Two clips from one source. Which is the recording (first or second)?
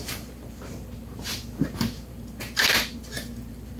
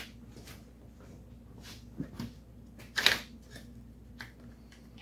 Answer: second